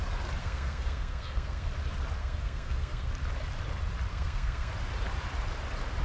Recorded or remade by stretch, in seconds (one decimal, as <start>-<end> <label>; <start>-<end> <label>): 0.0-0.4 recorded; 0.4-1.7 remade; 1.7-2.2 recorded; 2.2-3.1 remade; 3.1-4.1 recorded; 4.1-4.7 remade; 4.7-6.0 recorded